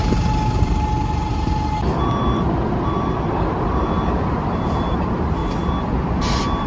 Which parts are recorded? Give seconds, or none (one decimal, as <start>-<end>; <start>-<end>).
0.0-3.5; 5.4-6.0